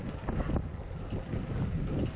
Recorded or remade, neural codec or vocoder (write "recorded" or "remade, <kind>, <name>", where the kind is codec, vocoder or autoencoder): recorded